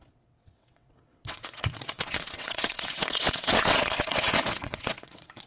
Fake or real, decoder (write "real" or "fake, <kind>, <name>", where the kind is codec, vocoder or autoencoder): fake, vocoder, WaveNeXt